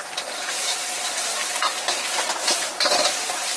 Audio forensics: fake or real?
fake